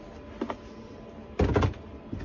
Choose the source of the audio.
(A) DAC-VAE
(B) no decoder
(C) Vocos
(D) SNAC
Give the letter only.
B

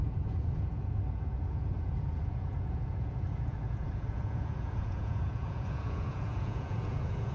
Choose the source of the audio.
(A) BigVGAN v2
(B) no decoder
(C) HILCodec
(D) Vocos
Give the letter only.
D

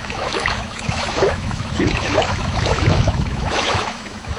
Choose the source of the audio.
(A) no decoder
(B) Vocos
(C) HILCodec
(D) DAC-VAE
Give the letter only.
D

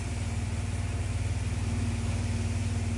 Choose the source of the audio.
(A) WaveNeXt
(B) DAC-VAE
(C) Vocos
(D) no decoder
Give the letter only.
D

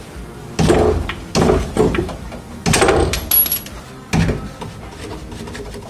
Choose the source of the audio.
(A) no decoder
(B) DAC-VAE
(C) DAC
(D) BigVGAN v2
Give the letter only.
A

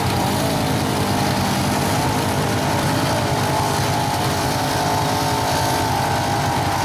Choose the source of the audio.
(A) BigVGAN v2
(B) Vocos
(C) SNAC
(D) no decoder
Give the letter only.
D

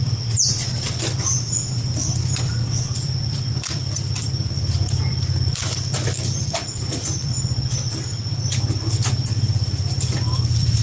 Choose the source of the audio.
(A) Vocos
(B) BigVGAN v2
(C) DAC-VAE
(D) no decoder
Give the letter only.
B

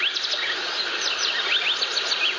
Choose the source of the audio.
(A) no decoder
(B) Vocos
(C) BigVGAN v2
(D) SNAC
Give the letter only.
A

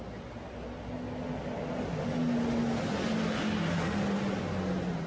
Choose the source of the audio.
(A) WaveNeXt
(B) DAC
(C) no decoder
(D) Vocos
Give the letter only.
C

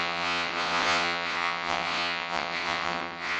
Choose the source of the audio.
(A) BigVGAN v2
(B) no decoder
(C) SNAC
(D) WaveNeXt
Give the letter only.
D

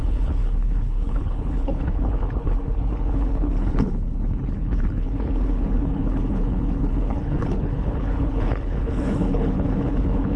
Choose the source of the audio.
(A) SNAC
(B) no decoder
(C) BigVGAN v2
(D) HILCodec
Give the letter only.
D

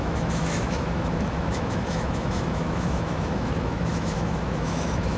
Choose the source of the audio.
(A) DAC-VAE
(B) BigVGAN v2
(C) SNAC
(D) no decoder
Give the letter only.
A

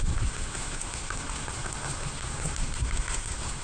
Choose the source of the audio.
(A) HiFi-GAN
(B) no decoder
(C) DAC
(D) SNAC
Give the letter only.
D